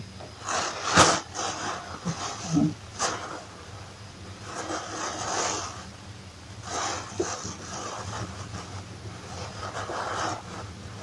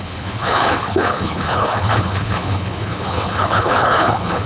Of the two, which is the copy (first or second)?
second